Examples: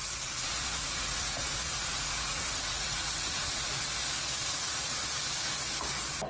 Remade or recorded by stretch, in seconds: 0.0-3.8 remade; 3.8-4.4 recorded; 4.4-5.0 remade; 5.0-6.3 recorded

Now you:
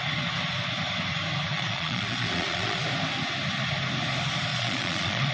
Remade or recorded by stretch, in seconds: 0.0-1.5 recorded; 1.5-2.8 remade; 2.8-4.5 recorded; 4.5-5.3 remade

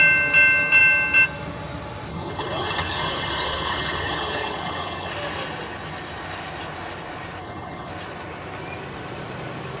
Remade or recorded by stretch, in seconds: 0.0-2.1 recorded; 2.1-5.1 remade; 5.1-7.4 recorded; 7.4-7.9 remade; 7.9-9.8 recorded

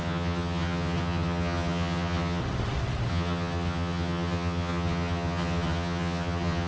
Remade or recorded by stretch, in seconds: 0.0-2.4 remade; 2.4-3.1 recorded; 3.1-6.7 remade

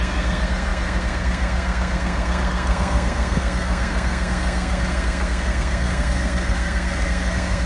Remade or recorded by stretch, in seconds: 0.0-7.7 remade

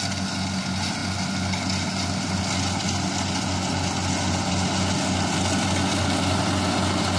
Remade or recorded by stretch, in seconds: 0.0-7.2 recorded